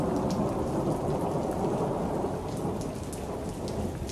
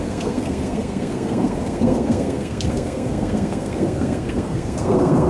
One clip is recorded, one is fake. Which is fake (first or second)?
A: second